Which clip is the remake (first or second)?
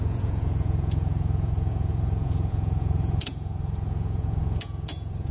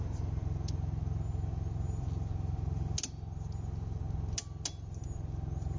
first